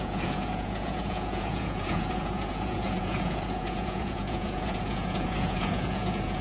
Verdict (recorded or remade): remade